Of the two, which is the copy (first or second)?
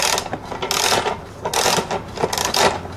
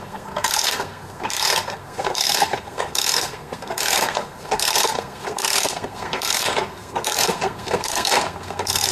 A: second